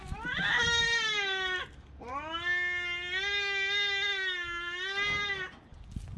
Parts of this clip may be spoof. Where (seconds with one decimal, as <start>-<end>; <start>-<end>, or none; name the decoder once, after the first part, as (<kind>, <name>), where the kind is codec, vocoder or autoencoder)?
none

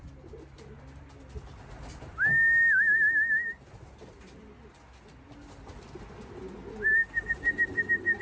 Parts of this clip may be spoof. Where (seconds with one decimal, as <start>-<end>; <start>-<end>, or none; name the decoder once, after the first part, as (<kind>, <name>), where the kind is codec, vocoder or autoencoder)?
none

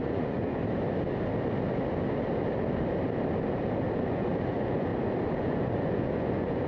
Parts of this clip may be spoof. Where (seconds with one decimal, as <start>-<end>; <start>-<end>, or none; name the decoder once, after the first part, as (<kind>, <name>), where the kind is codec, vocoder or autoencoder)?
0.0-0.6 (vocoder, Vocos); 4.1-4.9; 5.4-6.7

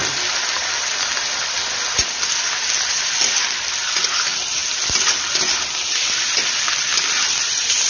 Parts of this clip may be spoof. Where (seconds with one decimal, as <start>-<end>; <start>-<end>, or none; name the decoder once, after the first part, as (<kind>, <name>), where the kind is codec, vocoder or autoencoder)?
none

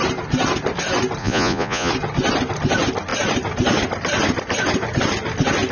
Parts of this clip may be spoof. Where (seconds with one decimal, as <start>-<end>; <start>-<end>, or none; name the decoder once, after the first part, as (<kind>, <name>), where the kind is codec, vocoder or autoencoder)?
1.2-1.9 (vocoder, Vocos)

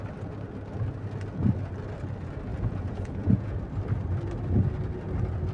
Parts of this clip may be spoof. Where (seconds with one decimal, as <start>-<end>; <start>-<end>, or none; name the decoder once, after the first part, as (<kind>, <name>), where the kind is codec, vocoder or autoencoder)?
2.5-3.6 (vocoder, Vocos)